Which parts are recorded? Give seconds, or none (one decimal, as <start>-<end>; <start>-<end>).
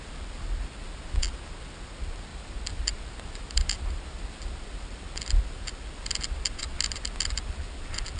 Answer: 0.0-2.3; 4.2-8.2